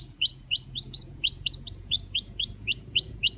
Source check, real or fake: fake